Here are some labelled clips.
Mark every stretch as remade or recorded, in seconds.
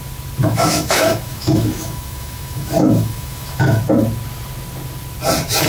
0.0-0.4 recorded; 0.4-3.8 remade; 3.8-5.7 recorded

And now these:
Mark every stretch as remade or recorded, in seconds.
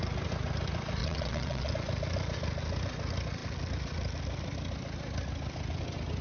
0.0-1.0 recorded; 1.0-1.7 remade; 1.7-6.2 recorded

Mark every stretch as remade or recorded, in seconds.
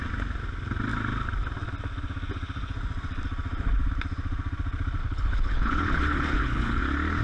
0.0-5.0 recorded; 5.0-6.8 remade; 6.8-7.2 recorded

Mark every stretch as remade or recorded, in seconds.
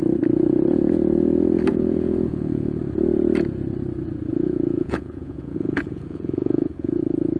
0.0-1.7 recorded; 1.7-2.8 remade; 2.8-4.3 recorded; 4.3-7.0 remade; 7.0-7.4 recorded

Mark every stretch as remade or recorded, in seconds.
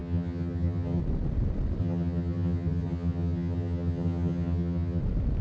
0.0-1.0 remade; 1.0-1.8 recorded; 1.8-5.0 remade; 5.0-5.4 recorded